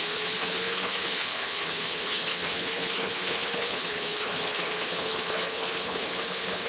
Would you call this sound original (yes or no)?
no